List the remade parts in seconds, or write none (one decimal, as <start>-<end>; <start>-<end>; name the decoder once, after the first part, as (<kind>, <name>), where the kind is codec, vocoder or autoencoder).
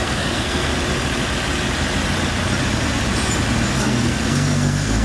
0.0-0.7 (codec, SNAC); 3.7-5.0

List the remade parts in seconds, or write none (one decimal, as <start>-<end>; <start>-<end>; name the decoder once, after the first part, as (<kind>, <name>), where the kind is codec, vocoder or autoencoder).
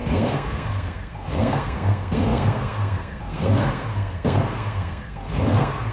0.0-5.9 (codec, SNAC)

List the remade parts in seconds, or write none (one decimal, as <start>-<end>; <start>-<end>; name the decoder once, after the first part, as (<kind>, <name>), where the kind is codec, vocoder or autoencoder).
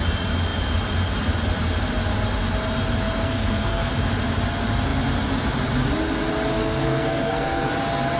3.2-3.9 (codec, SNAC); 6.5-7.7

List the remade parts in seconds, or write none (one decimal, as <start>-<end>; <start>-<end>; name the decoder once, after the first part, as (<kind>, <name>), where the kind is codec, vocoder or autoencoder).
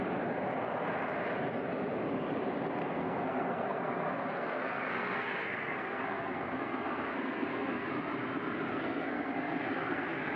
2.8-7.9 (codec, SNAC); 8.7-10.4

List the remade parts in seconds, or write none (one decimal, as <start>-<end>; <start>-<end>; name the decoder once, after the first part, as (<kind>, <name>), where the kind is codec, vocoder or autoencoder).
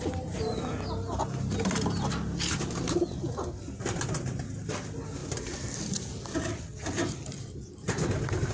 none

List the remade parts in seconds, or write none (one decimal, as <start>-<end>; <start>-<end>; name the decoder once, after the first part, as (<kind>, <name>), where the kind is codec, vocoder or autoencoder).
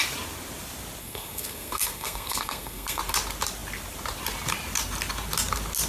1.0-3.0 (codec, SNAC)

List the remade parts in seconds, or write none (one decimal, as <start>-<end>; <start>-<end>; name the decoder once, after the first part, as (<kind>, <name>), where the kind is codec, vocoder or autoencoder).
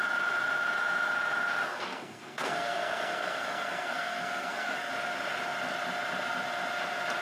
1.7-4.9 (codec, SNAC)